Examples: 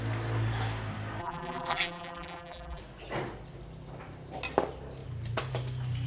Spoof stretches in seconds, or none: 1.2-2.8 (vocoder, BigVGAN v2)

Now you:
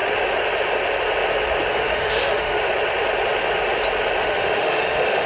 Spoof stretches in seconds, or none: 1.7-2.6 (autoencoder, DAC-VAE); 4.2-5.3

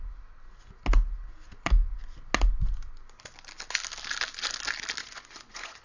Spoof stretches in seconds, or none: 5.0-5.8 (vocoder, Vocos)

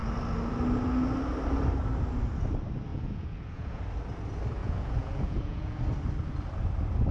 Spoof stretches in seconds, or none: 2.9-3.8 (vocoder, Vocos); 4.6-5.8

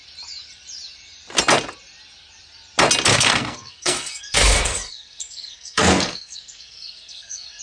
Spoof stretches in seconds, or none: 3.1-7.6 (codec, SNAC)

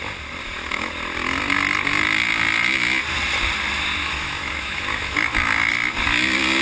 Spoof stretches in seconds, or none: 0.4-0.9 (autoencoder, DAC-VAE); 4.0-5.7

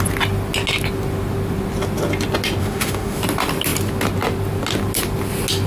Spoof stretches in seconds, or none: 2.6-3.2 (autoencoder, DAC-VAE)

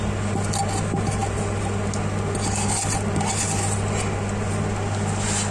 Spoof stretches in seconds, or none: none